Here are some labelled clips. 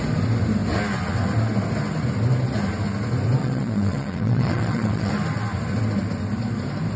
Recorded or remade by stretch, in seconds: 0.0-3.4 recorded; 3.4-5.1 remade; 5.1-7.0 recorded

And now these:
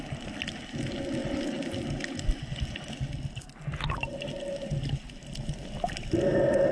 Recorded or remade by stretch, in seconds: 0.0-6.7 recorded

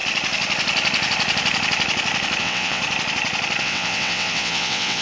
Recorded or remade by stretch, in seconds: 0.0-2.4 recorded; 2.4-2.8 remade; 2.8-3.6 recorded; 3.6-5.0 remade

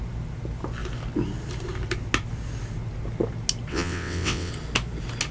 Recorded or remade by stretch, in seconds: 0.0-3.7 recorded; 3.7-4.5 remade; 4.5-5.3 recorded

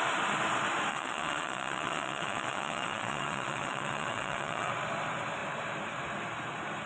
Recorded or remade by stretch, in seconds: 0.0-0.9 recorded; 0.9-4.7 remade; 4.7-6.9 recorded

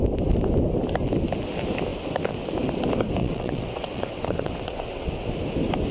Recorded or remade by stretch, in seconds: 0.0-3.2 recorded; 3.2-5.1 remade; 5.1-5.9 recorded